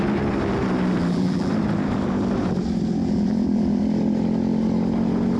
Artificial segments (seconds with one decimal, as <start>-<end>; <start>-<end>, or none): 1.0-1.5; 3.0-3.8

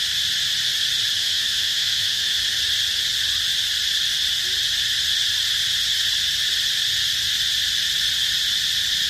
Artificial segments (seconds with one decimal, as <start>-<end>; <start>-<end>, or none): 1.2-2.4